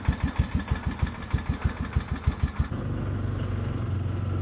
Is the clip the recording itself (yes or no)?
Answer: yes